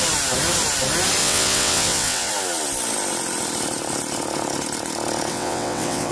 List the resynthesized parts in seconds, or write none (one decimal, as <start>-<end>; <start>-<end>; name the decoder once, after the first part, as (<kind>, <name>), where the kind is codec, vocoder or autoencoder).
1.2-2.3 (vocoder, WaveNeXt); 5.3-6.1